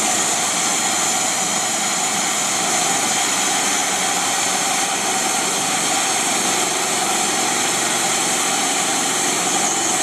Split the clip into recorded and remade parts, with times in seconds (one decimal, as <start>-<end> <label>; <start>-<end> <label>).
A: 0.0-8.6 recorded; 8.6-9.6 remade; 9.6-10.0 recorded